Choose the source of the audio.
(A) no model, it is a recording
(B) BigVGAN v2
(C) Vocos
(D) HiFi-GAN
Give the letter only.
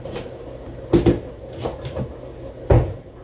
A